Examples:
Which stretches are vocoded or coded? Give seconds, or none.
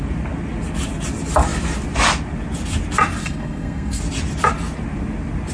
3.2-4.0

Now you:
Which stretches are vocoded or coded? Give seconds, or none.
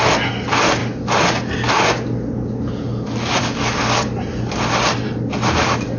none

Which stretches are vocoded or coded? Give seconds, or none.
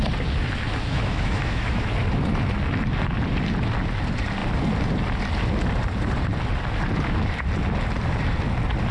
0.9-1.9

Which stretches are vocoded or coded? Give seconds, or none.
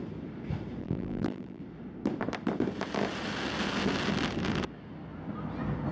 0.8-1.6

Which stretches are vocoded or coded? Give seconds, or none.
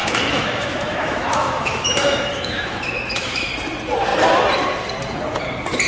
0.0-3.5